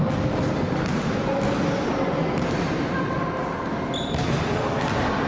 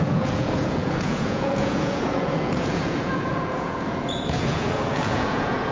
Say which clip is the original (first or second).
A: first